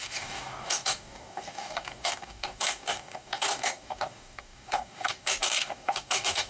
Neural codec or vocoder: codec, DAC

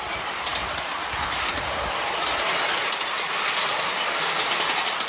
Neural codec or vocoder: none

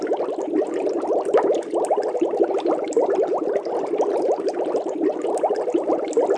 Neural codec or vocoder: none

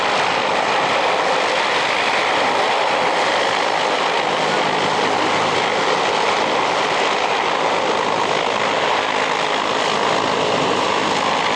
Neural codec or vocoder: none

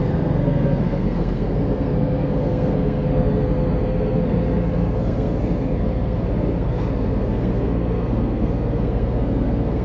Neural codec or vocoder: codec, SNAC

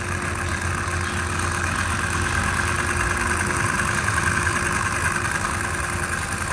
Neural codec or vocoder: none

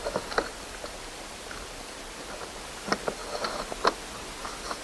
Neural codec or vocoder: none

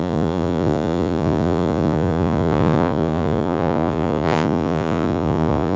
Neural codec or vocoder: vocoder, Vocos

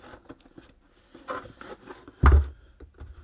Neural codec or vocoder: none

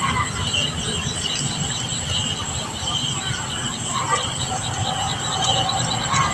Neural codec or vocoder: none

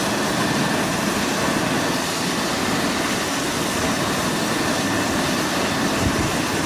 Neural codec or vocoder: none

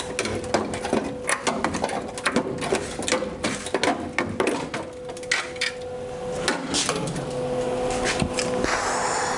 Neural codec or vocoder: none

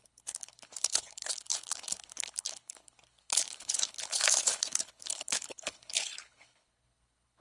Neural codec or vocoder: codec, HILCodec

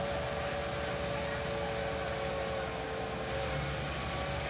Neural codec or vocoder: none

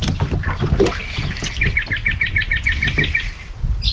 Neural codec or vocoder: none